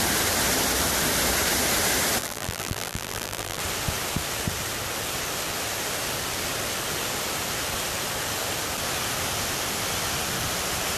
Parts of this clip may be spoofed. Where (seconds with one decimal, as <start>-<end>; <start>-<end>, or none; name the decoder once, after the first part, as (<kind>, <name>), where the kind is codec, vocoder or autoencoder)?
2.2-3.6 (vocoder, BigVGAN v2)